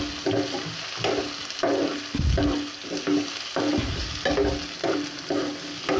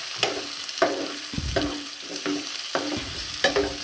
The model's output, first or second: second